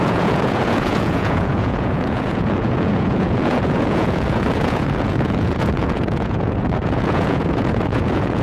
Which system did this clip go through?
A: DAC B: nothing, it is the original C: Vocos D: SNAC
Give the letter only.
C